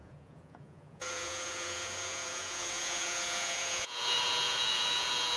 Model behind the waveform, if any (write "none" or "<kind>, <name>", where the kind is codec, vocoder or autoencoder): vocoder, Vocos